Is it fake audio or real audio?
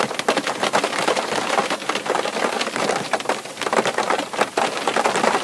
real